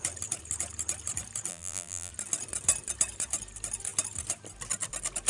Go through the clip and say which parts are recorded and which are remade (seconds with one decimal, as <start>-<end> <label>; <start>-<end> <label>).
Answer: 0.0-1.5 recorded; 1.5-2.1 remade; 2.1-5.3 recorded